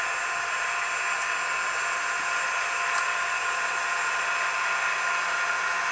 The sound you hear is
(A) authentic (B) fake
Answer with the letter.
A